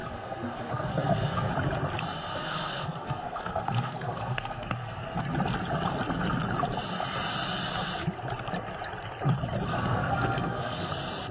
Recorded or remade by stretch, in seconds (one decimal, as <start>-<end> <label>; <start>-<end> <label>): 0.0-1.5 remade; 1.5-2.3 recorded; 2.3-5.2 remade; 5.2-9.7 recorded; 9.7-10.9 remade; 10.9-11.3 recorded